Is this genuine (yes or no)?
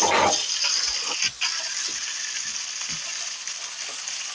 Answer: yes